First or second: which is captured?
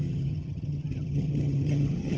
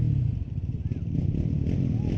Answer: second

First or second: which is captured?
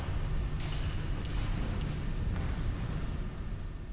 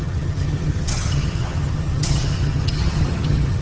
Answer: first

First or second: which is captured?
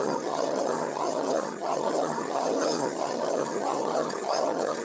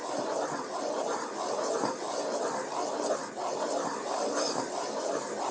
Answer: second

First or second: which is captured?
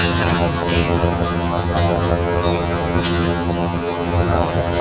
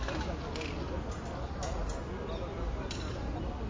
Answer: second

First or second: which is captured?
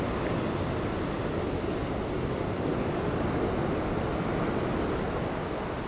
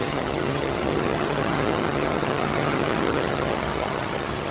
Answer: first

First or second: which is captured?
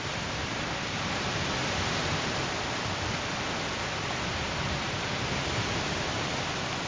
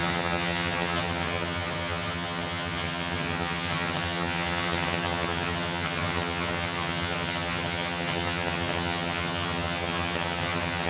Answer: first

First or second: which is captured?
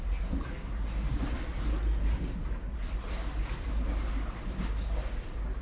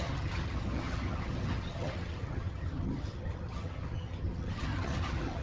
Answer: first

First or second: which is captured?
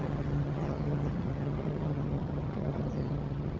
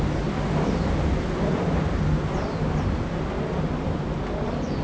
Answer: second